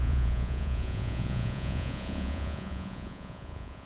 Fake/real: fake